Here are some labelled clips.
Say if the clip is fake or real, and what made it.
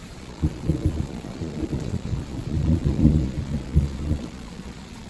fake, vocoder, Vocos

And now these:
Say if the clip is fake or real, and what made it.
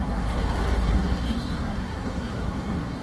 fake, codec, SNAC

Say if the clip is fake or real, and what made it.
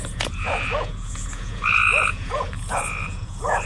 fake, vocoder, Vocos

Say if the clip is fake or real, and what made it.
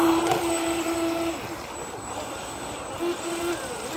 real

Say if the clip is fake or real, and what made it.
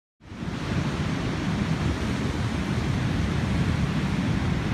real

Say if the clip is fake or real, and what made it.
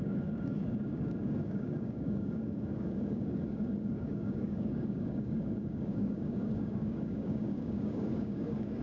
fake, codec, DAC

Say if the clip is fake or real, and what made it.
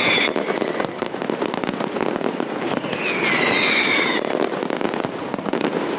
real